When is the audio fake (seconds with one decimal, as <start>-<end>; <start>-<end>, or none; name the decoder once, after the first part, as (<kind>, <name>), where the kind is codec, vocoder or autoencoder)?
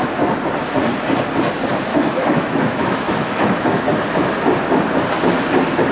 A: 1.9-3.8 (autoencoder, DAC-VAE)